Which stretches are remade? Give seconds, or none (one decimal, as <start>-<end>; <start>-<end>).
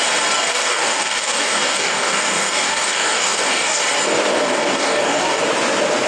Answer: 0.5-3.8; 4.3-5.4